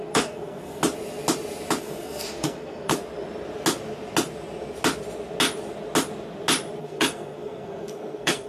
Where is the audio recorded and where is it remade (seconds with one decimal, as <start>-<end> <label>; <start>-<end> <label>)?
0.0-0.8 remade; 0.8-1.8 recorded; 1.8-2.9 remade; 2.9-6.8 recorded; 6.8-8.5 remade